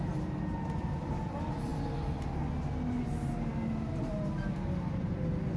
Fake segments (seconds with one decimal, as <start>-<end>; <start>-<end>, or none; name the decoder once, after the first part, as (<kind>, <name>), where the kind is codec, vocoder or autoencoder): none